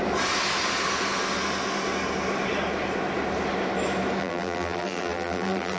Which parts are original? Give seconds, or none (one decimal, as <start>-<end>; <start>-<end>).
0.0-4.2